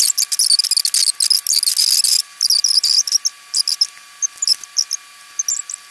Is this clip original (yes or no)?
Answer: yes